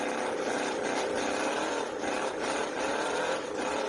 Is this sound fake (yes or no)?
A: no